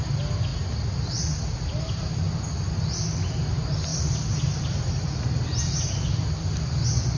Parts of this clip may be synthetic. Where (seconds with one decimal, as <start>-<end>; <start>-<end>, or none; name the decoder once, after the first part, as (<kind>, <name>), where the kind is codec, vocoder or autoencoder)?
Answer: none